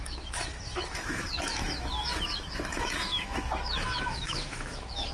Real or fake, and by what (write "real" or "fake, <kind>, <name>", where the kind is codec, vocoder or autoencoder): fake, autoencoder, DAC-VAE